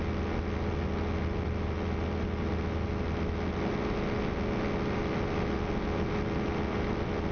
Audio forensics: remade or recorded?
recorded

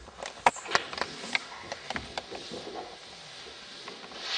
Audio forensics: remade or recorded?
recorded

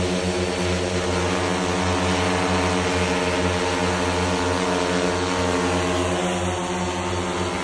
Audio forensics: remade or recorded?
recorded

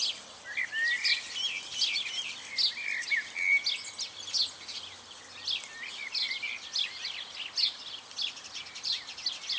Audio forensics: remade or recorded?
recorded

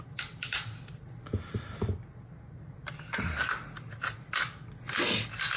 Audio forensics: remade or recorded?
recorded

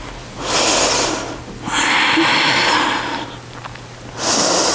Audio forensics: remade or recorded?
recorded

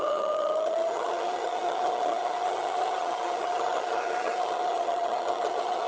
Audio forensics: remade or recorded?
remade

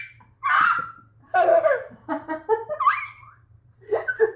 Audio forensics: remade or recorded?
remade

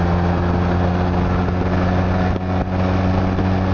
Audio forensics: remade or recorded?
recorded